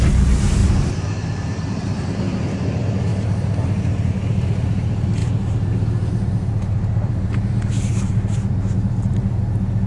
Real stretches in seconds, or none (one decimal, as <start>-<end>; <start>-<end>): 0.0-0.6; 2.2-3.1; 4.1-5.2; 9.4-9.9